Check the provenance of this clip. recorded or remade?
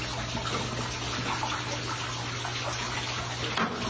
recorded